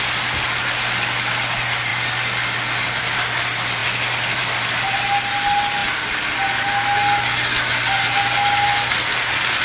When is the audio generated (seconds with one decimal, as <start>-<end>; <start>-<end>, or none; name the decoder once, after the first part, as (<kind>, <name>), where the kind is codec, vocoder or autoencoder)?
none